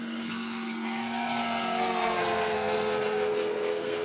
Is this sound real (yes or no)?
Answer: no